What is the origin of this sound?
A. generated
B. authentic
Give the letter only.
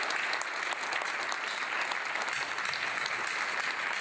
B